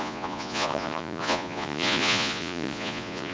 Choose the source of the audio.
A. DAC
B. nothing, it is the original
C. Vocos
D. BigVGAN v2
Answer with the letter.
C